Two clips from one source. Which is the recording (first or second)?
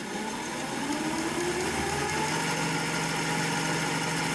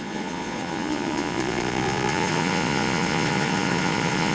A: first